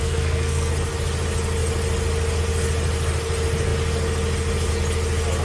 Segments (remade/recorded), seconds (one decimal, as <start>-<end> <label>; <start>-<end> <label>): 0.0-0.7 remade; 0.7-5.4 recorded